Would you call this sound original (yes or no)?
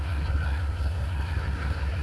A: no